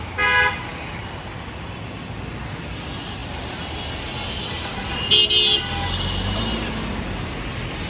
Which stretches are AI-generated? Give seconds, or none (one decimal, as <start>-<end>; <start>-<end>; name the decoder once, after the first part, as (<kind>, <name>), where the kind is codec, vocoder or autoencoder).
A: none